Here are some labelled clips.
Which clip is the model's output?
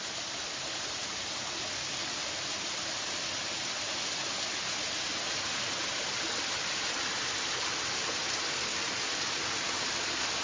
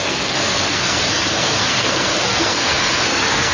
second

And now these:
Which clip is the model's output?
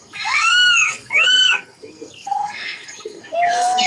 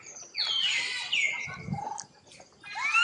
first